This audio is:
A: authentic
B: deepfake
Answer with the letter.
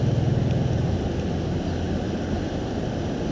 A